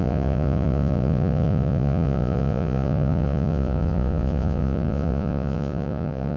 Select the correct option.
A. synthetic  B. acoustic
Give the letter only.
A